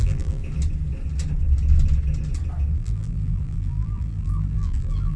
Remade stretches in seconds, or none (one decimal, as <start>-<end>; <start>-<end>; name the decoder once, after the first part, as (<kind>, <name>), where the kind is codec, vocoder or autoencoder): 0.0-0.4 (vocoder, BigVGAN v2); 2.7-5.2

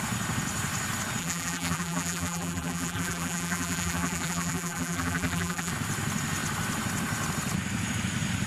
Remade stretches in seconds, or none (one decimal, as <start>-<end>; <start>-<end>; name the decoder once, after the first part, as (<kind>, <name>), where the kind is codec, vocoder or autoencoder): 1.2-5.7 (vocoder, BigVGAN v2)

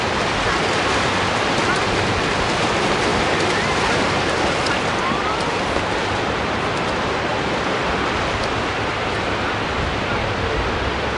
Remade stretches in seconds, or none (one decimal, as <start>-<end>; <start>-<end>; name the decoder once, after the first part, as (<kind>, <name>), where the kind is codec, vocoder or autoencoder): none

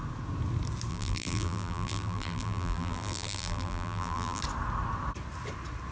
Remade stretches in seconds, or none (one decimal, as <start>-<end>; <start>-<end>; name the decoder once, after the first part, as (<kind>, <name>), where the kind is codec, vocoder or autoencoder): 0.9-4.4 (vocoder, BigVGAN v2)

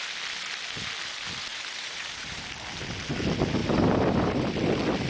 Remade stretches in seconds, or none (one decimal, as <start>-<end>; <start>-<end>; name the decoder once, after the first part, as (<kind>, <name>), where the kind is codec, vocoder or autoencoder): 1.5-2.5 (vocoder, BigVGAN v2); 3.6-4.5